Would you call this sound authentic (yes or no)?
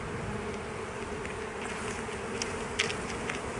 yes